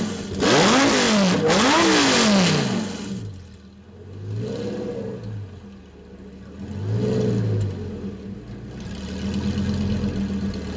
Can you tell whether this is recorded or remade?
recorded